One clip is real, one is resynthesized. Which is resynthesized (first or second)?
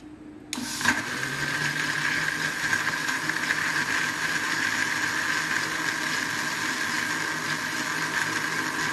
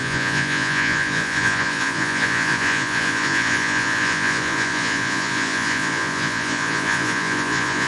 second